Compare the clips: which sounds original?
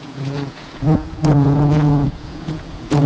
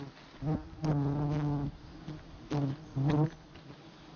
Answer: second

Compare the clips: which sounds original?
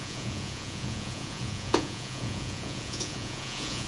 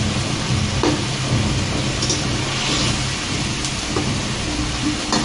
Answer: second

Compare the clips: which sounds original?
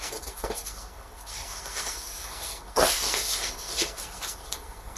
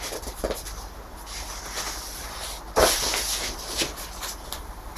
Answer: second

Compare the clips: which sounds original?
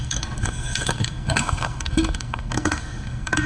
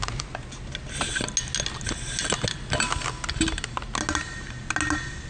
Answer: second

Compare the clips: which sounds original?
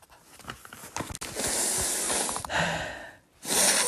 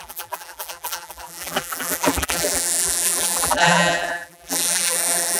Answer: first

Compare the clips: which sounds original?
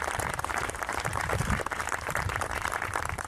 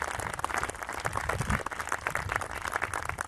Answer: second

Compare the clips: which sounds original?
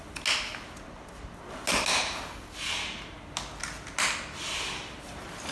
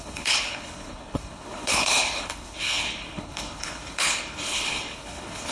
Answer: first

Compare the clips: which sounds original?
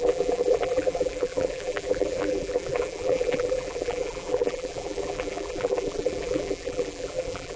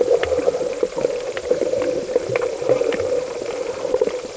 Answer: second